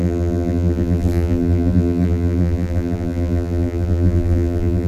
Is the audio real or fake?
fake